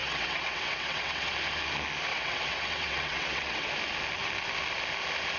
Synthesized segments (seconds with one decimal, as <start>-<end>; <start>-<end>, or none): 0.0-1.3; 2.1-3.7